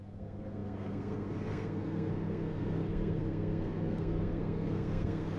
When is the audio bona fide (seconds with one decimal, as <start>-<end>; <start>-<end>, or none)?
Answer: none